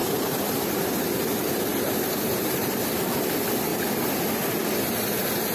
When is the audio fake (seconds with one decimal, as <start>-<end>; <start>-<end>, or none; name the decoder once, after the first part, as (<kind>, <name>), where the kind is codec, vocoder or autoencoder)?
0.0-0.8 (vocoder, BigVGAN v2); 1.7-2.8